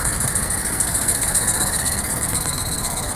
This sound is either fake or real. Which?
fake